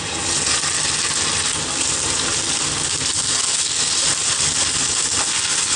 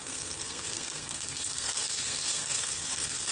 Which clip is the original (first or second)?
first